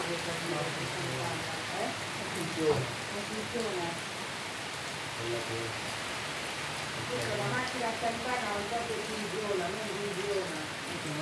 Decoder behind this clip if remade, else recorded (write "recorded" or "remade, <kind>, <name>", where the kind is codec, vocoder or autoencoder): recorded